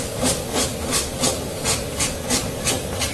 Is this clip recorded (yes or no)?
no